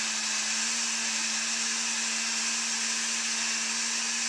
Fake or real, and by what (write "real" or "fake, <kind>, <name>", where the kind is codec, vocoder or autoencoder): real